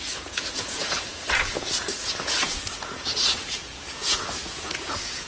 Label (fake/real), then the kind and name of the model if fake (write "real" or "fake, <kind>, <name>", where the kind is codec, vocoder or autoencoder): fake, vocoder, Vocos